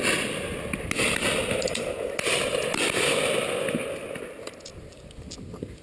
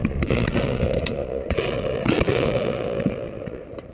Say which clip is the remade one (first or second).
second